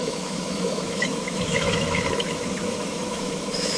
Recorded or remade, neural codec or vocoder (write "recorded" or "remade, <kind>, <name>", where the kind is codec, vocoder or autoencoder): remade, autoencoder, DAC-VAE